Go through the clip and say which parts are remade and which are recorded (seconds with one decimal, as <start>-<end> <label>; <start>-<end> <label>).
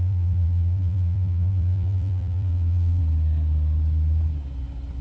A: 0.0-3.0 remade; 3.0-5.0 recorded